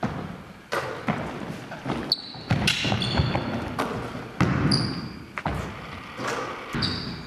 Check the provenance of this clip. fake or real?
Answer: real